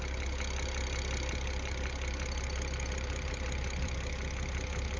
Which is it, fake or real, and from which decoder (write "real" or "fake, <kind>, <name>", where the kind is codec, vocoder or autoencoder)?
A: real